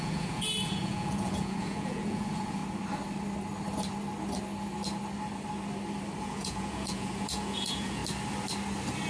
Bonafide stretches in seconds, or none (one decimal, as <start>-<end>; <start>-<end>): 2.6-6.2; 8.0-9.1